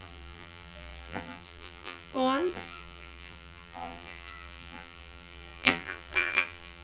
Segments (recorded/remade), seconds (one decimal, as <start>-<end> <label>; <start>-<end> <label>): 0.0-6.8 remade